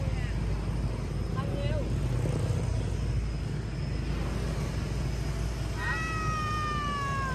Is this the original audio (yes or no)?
yes